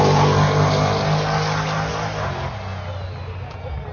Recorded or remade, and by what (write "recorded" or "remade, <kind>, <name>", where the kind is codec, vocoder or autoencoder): recorded